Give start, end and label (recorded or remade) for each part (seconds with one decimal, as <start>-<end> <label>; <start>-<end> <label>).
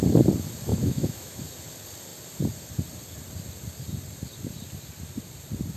0.0-0.7 recorded; 0.7-1.4 remade; 1.4-5.8 recorded